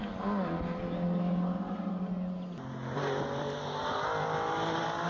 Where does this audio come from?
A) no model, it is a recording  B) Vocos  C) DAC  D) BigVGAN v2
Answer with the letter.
A